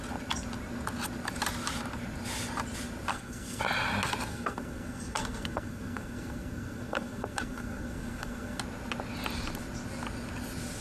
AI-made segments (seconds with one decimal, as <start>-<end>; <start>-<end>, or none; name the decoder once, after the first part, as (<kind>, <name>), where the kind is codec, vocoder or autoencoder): 3.1-3.6 (codec, SNAC); 4.3-8.6